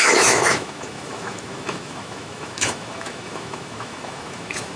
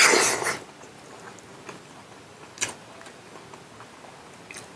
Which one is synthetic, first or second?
first